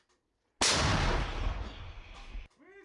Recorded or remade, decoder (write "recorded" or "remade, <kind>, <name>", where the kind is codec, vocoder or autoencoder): recorded